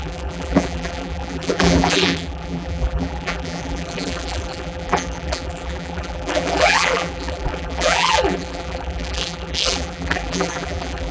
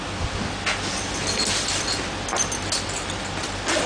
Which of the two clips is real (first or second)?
second